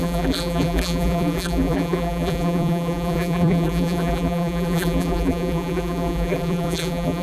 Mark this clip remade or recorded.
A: remade